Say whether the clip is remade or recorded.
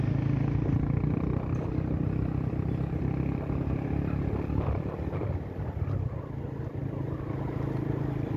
recorded